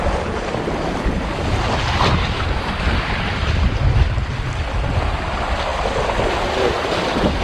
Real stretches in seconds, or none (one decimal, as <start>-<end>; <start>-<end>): 0.0-7.4